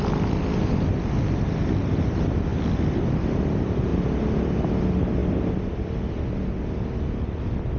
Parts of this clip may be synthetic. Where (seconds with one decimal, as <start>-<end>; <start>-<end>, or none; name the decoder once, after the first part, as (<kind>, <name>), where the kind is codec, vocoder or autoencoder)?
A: none